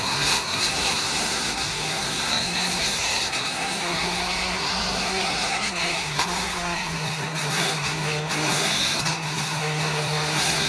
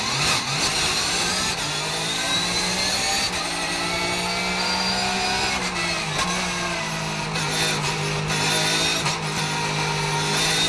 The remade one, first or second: first